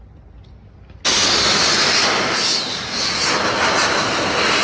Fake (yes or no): no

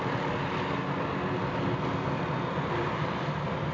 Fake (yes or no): no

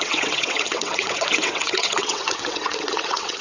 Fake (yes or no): yes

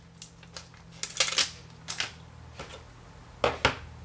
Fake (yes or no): no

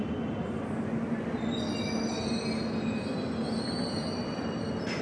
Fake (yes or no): no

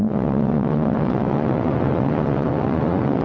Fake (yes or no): yes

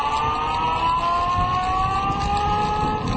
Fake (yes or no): no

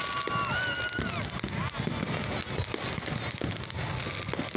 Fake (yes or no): no